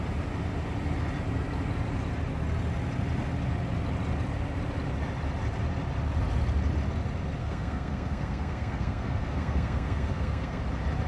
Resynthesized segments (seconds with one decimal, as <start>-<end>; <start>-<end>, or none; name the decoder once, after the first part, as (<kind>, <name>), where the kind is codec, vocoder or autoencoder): 7.4-10.6 (codec, SNAC)